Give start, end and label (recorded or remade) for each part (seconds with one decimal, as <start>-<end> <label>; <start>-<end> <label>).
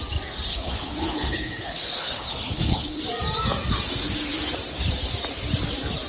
0.0-0.5 recorded; 0.5-3.0 remade; 3.0-6.1 recorded